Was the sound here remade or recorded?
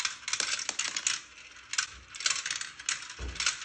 recorded